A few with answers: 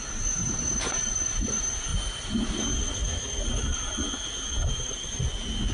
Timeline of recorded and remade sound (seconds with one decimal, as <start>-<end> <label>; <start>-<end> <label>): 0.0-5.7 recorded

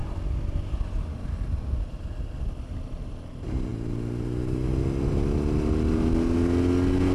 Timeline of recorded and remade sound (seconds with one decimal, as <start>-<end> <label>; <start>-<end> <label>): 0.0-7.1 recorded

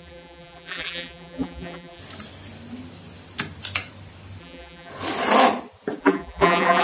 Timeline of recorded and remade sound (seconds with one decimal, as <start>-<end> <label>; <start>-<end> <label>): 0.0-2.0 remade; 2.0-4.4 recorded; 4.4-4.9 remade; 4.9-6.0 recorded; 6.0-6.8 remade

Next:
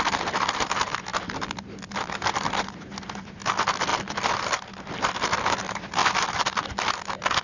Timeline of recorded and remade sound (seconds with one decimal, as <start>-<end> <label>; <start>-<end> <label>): 0.0-1.1 recorded; 1.1-3.5 remade; 3.5-3.9 recorded; 3.9-5.1 remade; 5.1-6.0 recorded; 6.0-6.7 remade; 6.7-7.4 recorded

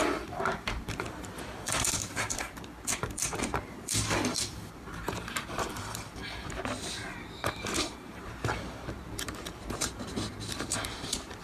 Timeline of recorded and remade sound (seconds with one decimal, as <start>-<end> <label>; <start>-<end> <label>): 0.0-6.2 remade; 6.2-7.3 recorded; 7.3-11.4 remade